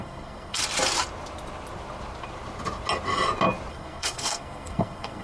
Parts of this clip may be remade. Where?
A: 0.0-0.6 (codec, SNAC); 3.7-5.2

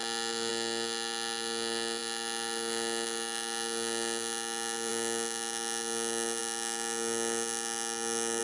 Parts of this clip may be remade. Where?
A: none